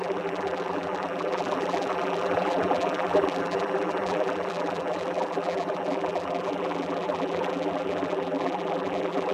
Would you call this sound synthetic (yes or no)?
yes